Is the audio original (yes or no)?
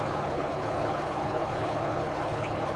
no